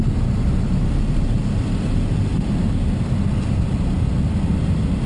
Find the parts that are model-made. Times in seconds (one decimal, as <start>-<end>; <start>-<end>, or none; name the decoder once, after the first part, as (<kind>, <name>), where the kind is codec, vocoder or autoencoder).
none